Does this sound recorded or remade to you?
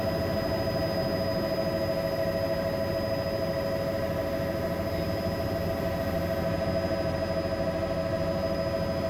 recorded